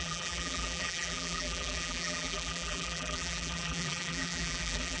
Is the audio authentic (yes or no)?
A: no